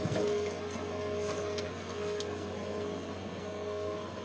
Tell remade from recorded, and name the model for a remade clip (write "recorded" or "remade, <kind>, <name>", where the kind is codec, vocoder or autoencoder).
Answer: remade, codec, SNAC